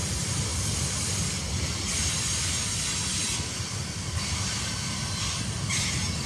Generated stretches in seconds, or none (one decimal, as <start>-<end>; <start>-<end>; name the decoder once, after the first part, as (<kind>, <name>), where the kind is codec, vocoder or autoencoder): none